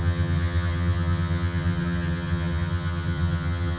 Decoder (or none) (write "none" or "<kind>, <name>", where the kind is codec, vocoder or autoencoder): vocoder, HiFi-GAN